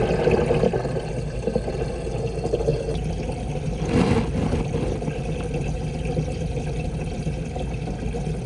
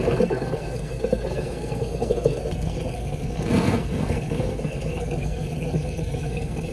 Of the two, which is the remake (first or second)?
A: second